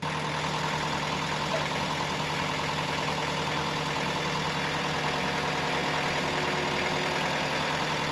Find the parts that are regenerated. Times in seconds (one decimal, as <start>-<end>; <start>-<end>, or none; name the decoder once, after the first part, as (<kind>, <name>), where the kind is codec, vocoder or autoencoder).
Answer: none